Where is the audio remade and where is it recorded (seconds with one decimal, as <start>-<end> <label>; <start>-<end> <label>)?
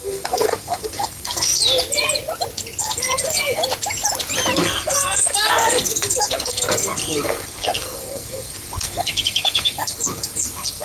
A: 0.0-1.6 remade; 1.6-2.8 recorded; 2.8-3.6 remade; 3.6-4.6 recorded; 4.6-10.8 remade